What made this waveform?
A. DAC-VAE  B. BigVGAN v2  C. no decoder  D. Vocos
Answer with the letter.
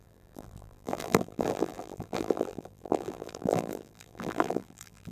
B